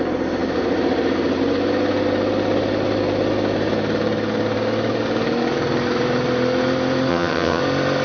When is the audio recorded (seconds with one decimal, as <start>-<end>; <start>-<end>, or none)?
0.0-7.1; 7.6-8.0